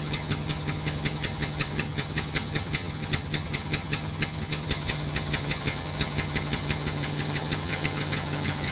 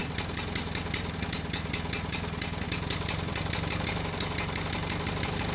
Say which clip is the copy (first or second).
first